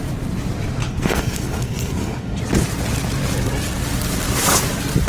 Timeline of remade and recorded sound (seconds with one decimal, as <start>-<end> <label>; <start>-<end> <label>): 0.0-0.8 recorded; 0.8-2.4 remade; 2.4-5.1 recorded